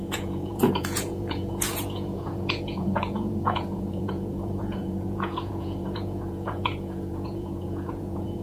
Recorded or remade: remade